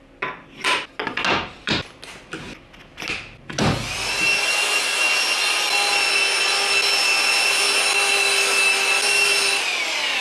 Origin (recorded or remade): recorded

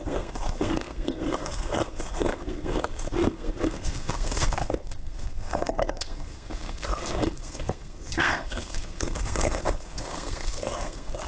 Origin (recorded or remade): remade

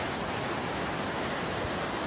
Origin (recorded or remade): recorded